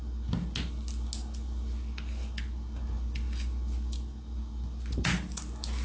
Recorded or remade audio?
recorded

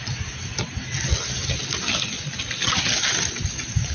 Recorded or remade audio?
recorded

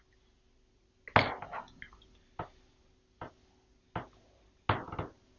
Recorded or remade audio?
recorded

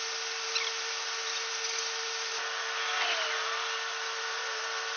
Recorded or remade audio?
recorded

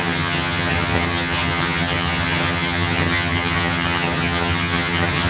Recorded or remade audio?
remade